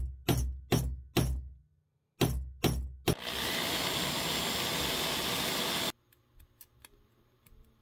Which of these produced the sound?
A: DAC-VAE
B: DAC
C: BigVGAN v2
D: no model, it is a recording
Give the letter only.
D